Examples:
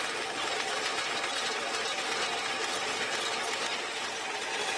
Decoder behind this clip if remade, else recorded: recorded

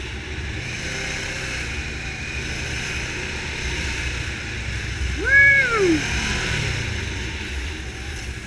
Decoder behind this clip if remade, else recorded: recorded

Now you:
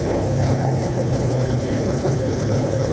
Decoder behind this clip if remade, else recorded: remade, codec, HILCodec